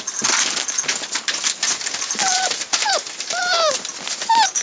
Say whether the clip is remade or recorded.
recorded